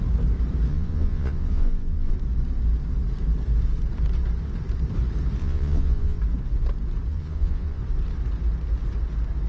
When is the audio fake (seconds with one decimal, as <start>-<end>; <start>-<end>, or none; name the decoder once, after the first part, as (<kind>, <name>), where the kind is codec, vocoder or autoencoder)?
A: 0.7-2.1 (vocoder, Vocos); 5.4-6.2; 7.1-7.8